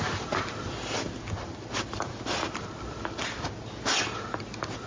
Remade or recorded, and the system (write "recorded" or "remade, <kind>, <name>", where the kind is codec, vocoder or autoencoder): recorded